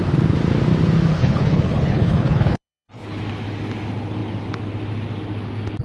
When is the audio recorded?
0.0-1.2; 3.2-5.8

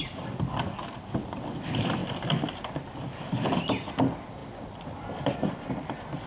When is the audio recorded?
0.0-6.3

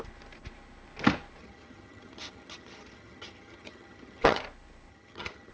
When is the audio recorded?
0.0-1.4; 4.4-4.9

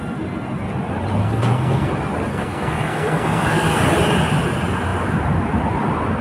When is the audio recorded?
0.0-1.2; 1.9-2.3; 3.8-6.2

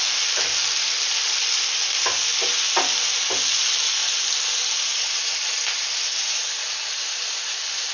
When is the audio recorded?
0.0-4.0